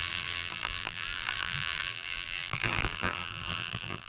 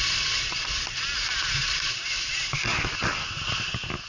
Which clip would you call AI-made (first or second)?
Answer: first